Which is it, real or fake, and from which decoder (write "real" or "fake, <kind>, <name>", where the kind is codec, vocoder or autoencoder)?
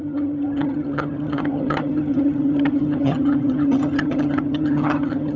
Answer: fake, vocoder, HiFi-GAN